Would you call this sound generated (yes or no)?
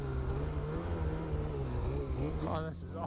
no